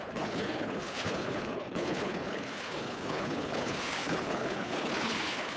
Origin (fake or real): fake